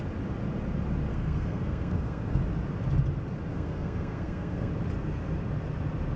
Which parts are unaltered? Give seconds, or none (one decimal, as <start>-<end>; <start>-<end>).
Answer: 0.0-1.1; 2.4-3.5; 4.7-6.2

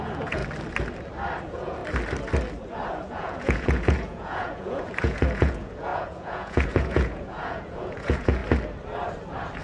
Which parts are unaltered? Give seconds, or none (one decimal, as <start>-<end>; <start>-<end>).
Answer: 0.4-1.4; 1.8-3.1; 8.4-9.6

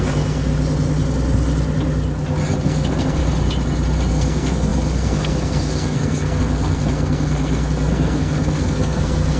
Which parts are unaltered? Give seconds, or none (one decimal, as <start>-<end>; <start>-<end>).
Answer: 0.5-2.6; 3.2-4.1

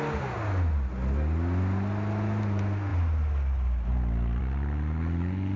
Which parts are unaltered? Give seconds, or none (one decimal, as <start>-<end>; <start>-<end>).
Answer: 0.0-5.6

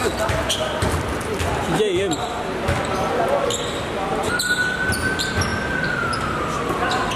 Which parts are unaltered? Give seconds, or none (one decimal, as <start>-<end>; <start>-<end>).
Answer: 0.0-7.2

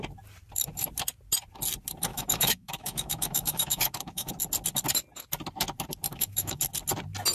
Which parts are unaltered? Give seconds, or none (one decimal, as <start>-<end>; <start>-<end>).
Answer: 0.0-2.1; 4.3-6.1; 6.6-7.3